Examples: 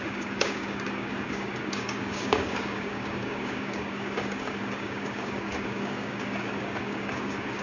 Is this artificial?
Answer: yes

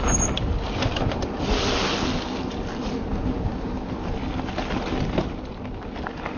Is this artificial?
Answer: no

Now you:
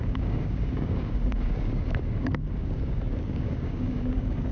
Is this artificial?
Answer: yes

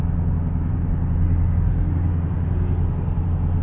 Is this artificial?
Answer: no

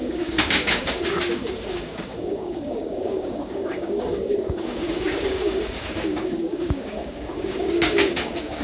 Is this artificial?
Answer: yes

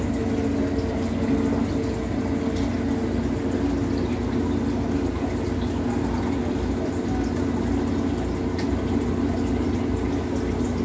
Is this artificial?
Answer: no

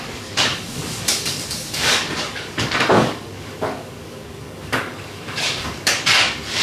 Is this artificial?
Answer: yes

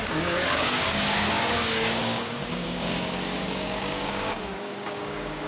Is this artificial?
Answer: yes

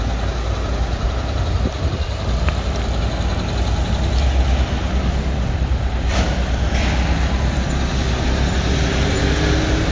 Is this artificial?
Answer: no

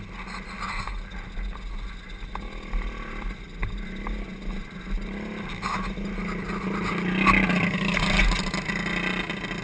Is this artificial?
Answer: no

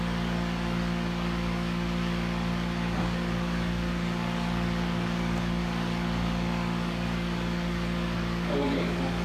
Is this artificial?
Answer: yes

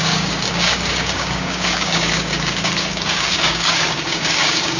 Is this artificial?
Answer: yes